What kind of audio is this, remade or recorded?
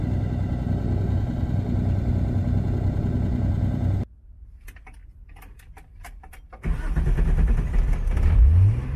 recorded